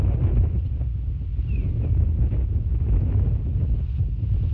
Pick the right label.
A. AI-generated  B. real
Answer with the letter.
B